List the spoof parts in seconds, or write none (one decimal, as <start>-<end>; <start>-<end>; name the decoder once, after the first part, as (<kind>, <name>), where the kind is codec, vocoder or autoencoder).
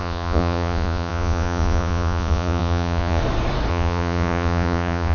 0.0-3.2 (vocoder, Vocos); 3.7-5.1